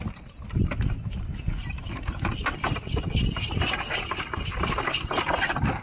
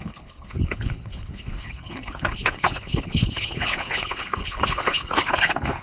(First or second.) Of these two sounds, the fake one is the second